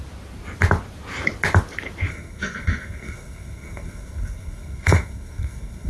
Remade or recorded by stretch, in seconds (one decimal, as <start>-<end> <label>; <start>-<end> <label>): 0.0-2.1 recorded; 2.1-5.9 remade